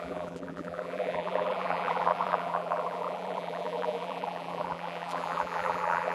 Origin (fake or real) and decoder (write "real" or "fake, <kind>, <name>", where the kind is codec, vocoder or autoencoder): fake, vocoder, BigVGAN v2